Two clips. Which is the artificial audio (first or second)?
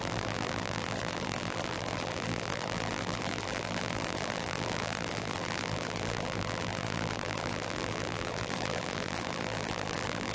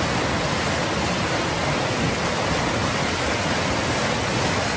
first